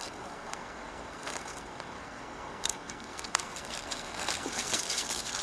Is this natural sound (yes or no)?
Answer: no